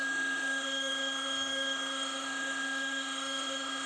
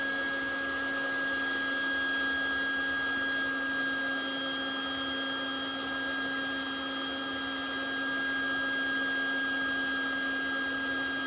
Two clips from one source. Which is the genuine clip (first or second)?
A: second